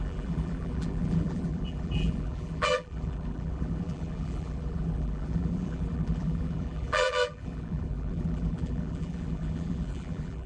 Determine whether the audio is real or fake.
fake